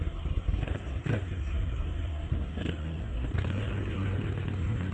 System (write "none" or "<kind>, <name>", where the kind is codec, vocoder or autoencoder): codec, SNAC